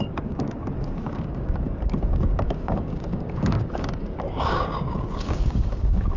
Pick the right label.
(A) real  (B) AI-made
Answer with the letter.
B